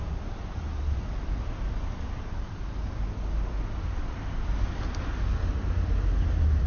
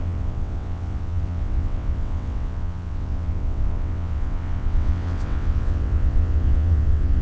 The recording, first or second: first